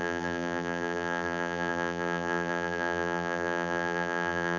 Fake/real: fake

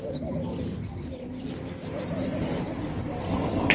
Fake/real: real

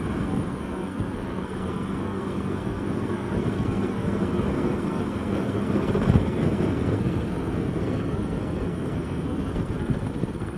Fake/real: fake